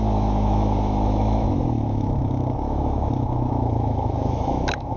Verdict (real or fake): fake